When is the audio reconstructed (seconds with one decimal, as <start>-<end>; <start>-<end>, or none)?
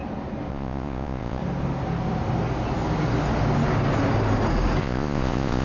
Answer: 0.5-1.4; 4.8-5.6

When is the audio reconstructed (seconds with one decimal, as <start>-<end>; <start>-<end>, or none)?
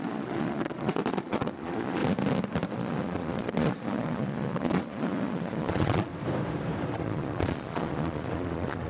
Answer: 0.0-2.0; 2.7-6.1; 6.9-8.9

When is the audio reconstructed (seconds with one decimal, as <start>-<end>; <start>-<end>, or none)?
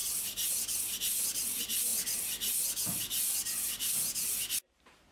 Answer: none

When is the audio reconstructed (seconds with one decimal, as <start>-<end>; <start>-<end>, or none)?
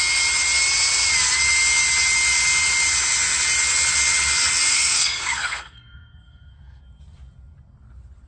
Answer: 4.7-6.8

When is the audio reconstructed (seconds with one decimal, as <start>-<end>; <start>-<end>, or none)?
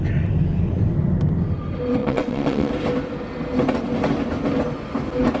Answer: 2.0-2.7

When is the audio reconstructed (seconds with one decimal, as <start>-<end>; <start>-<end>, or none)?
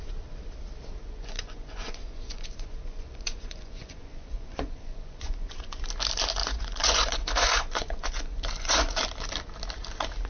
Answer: 1.0-5.8; 6.4-9.0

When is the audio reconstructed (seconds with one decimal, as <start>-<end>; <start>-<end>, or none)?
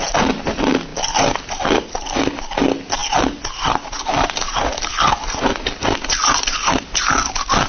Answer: none